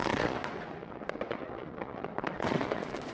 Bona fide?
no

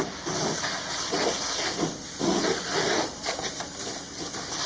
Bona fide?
yes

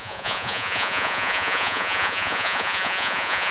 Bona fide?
no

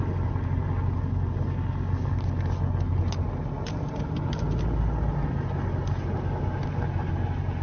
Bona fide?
yes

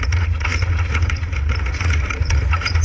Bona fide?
no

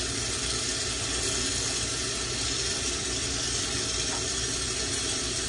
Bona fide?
yes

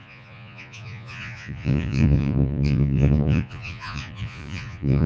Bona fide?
no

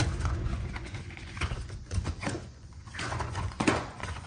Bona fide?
no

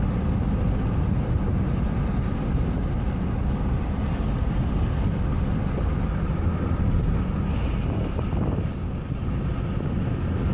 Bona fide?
yes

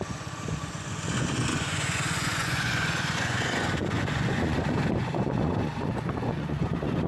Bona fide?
no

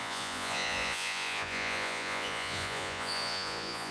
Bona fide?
no